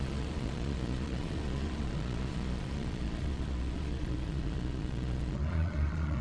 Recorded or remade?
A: remade